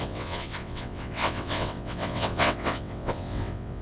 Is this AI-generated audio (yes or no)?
yes